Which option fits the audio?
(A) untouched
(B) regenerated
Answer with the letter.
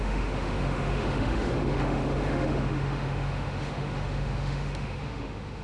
B